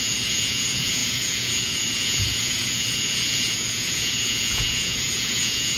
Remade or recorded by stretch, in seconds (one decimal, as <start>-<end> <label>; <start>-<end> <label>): 0.0-5.8 remade